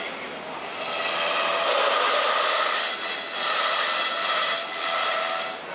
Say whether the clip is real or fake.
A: real